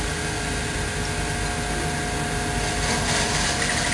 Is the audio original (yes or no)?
yes